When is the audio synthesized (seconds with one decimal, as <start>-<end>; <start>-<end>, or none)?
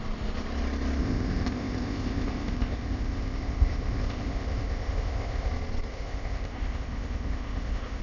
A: 1.0-5.5; 5.9-8.0